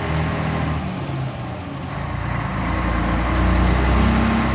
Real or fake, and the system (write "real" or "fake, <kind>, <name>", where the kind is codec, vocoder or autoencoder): real